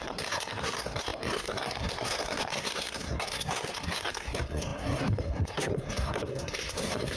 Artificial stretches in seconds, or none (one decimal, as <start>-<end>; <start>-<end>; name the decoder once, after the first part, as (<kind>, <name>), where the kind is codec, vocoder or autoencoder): 0.0-7.2 (codec, SNAC)